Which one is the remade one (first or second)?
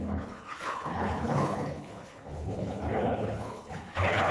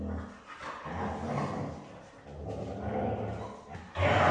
first